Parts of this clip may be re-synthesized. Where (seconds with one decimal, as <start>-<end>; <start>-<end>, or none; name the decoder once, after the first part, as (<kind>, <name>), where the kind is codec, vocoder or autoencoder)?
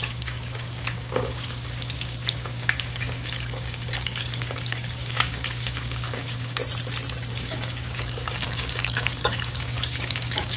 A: 0.0-6.6 (codec, DAC); 7.3-10.6